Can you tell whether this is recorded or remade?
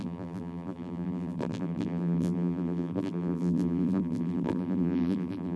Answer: remade